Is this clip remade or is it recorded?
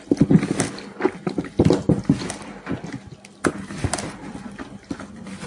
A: recorded